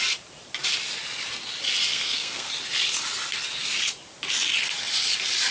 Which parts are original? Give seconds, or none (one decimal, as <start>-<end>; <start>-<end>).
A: 0.0-1.9; 2.5-5.5